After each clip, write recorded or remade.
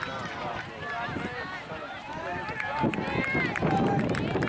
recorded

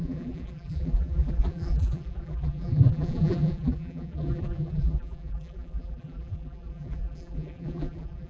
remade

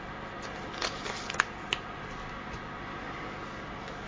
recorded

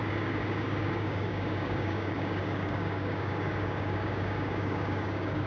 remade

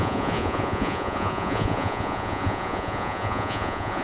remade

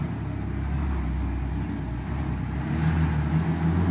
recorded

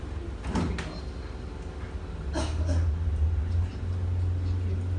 recorded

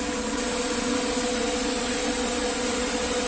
recorded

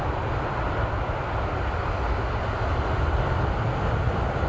recorded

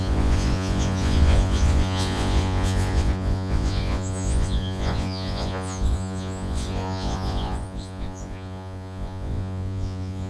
remade